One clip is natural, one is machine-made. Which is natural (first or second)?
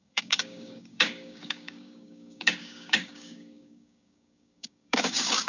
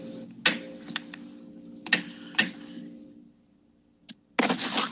second